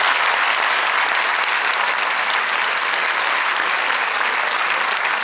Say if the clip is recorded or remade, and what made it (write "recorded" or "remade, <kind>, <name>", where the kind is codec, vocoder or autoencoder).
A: recorded